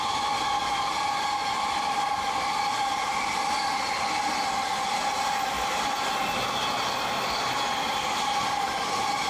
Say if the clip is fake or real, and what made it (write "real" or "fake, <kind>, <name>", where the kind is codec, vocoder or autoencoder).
real